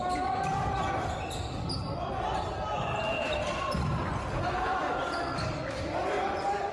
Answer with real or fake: fake